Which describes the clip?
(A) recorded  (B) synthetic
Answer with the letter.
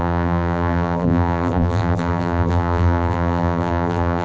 B